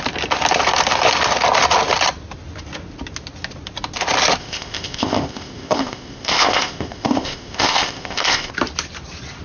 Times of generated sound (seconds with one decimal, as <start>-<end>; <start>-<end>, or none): 4.4-8.5

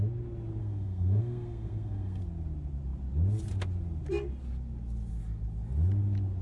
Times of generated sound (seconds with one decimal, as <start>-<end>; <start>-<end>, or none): 0.6-2.2